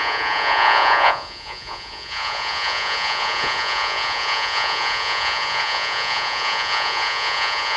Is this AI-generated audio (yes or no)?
yes